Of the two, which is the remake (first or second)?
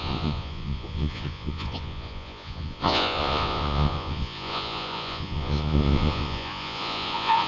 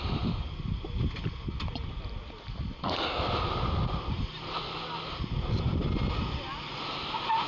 first